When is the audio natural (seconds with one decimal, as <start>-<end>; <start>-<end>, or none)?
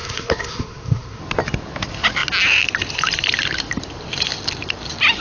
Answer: 1.2-5.2